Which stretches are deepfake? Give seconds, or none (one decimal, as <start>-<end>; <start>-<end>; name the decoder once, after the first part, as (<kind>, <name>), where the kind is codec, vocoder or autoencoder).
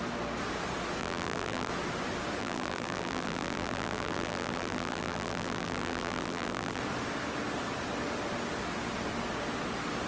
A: 1.0-1.7 (vocoder, BigVGAN v2); 2.4-6.8